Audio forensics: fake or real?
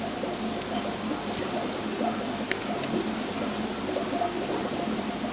real